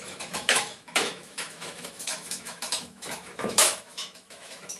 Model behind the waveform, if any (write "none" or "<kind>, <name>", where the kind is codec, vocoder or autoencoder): autoencoder, DAC-VAE